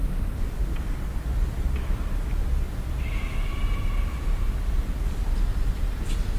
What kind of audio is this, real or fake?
real